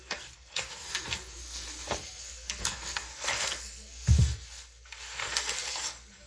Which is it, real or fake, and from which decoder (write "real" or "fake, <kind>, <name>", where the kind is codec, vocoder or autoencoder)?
fake, codec, SNAC